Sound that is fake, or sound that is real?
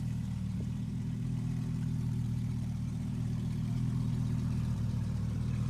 fake